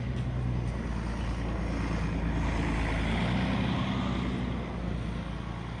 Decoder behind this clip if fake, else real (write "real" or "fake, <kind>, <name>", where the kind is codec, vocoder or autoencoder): real